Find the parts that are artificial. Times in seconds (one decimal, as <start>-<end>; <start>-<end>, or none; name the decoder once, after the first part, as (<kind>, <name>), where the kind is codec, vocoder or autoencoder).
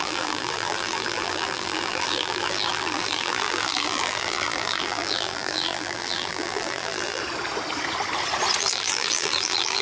0.0-7.2 (vocoder, BigVGAN v2); 8.6-9.8